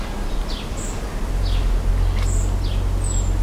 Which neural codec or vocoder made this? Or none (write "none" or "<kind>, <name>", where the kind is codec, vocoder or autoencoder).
none